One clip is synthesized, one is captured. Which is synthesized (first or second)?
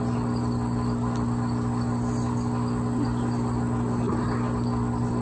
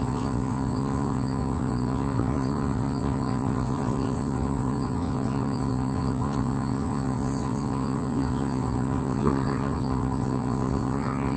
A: second